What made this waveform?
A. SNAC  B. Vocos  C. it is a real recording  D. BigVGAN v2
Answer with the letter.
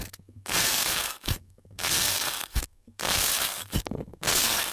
A